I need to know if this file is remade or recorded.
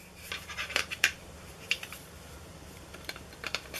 remade